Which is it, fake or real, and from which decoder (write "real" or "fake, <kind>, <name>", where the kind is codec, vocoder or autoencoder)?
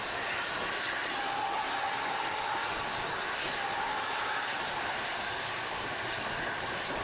fake, vocoder, BigVGAN v2